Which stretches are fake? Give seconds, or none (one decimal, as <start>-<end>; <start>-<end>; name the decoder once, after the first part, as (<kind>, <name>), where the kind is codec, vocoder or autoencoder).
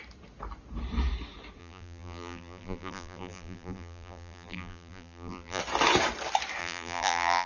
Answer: 1.6-5.6 (vocoder, BigVGAN v2); 6.6-7.5